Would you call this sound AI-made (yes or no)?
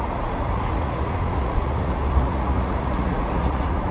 yes